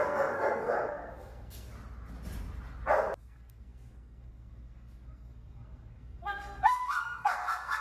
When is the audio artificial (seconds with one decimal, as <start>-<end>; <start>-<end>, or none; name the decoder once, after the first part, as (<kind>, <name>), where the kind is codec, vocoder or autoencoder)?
0.0-1.7 (codec, SNAC); 3.2-7.8